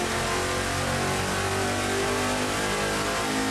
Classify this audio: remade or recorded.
recorded